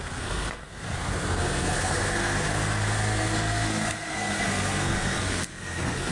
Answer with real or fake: fake